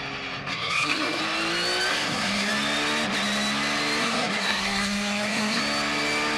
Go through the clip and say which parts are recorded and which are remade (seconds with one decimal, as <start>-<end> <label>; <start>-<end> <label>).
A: 0.0-0.5 recorded; 0.5-1.2 remade; 1.2-1.9 recorded; 1.9-2.5 remade; 2.5-4.0 recorded; 4.0-5.6 remade; 5.6-6.4 recorded